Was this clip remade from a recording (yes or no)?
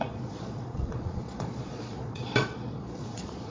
yes